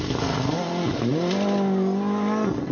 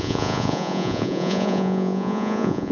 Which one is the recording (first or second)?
first